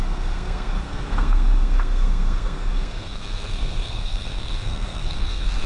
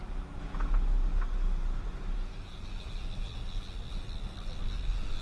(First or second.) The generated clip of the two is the first